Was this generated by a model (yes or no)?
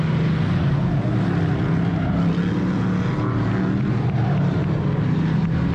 no